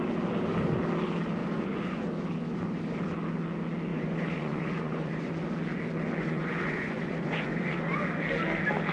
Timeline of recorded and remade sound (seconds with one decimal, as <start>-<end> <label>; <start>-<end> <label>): 0.0-1.4 recorded; 1.4-2.0 remade; 2.0-3.9 recorded; 3.9-5.3 remade; 5.3-6.2 recorded; 6.2-8.0 remade; 8.0-8.9 recorded